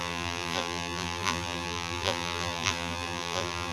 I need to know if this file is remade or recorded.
remade